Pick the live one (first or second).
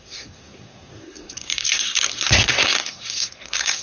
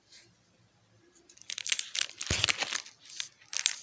second